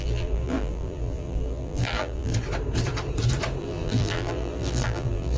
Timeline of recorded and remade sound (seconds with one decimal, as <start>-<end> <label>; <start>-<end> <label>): 0.0-2.3 remade; 2.3-3.6 recorded; 3.6-5.4 remade